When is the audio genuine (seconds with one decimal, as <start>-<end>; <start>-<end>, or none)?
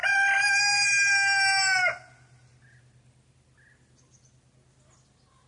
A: 0.0-5.5